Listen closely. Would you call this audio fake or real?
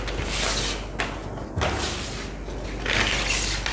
real